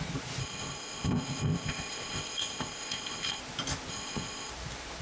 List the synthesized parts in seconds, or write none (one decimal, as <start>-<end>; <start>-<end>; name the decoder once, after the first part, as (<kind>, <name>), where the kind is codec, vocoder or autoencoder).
0.4-3.4 (codec, ZipCodec); 3.9-4.5